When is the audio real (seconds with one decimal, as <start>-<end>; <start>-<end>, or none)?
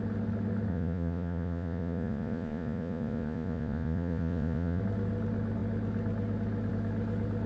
0.0-0.7; 4.8-7.5